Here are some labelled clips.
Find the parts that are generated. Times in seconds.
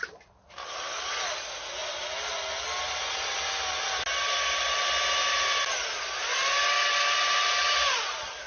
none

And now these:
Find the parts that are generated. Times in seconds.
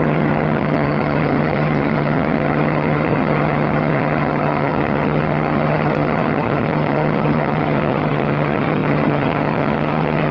0.0-10.3 (vocoder, HiFi-GAN)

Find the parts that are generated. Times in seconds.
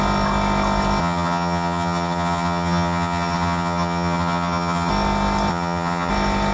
1.0-4.9 (vocoder, HiFi-GAN); 5.5-6.1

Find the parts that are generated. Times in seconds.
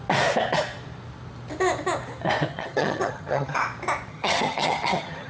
2.5-3.6 (vocoder, HiFi-GAN); 4.1-5.3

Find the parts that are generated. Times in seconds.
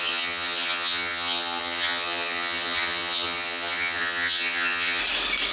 0.0-5.0 (vocoder, HiFi-GAN)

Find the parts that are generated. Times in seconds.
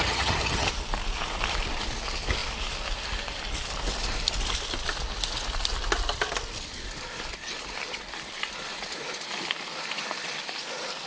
0.0-0.7 (vocoder, HiFi-GAN)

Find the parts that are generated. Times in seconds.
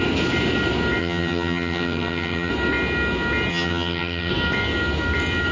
1.0-2.5 (vocoder, HiFi-GAN); 3.5-4.3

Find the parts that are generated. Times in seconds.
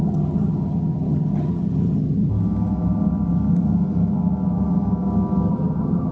0.0-2.3 (vocoder, HiFi-GAN); 5.5-6.1